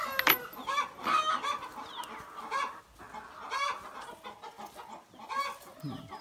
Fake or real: real